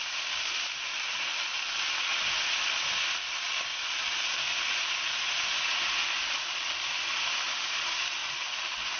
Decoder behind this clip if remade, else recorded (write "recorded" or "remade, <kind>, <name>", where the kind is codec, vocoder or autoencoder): recorded